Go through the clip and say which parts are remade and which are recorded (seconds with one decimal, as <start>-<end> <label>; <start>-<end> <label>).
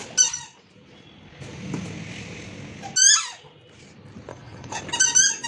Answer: 0.0-4.3 recorded; 4.3-4.8 remade; 4.8-5.5 recorded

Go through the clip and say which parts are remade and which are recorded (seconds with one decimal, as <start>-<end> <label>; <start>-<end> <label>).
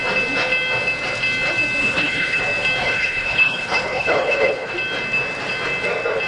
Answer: 0.0-1.8 recorded; 1.8-2.4 remade; 2.4-2.8 recorded; 2.8-4.7 remade; 4.7-6.3 recorded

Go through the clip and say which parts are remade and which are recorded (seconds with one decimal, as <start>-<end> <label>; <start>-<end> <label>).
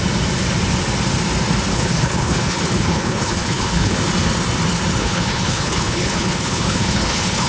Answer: 0.0-1.7 recorded; 1.7-4.0 remade; 4.0-5.0 recorded; 5.0-7.5 remade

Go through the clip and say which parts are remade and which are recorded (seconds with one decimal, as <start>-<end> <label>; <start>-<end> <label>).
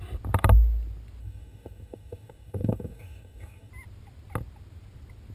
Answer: 0.0-1.2 recorded; 1.2-3.7 remade; 3.7-5.3 recorded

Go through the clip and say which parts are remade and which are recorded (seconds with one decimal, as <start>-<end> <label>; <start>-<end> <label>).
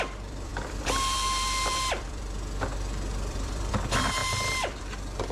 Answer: 0.0-5.3 remade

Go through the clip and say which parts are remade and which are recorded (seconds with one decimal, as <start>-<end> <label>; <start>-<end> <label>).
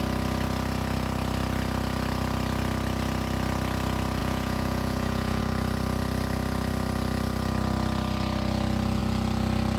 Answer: 0.0-4.2 recorded; 4.2-5.4 remade; 5.4-9.8 recorded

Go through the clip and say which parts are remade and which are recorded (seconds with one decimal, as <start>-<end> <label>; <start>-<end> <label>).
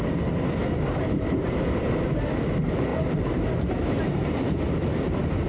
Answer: 0.0-0.6 recorded; 0.6-2.3 remade; 2.3-2.9 recorded; 2.9-4.6 remade; 4.6-5.5 recorded